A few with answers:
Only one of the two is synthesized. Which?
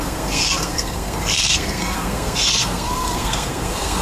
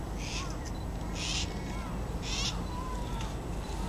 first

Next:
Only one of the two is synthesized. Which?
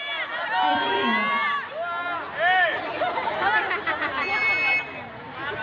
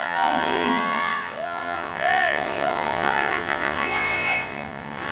second